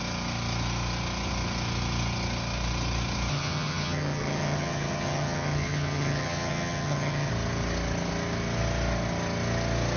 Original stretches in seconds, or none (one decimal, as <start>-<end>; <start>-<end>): 0.0-3.3; 7.3-10.0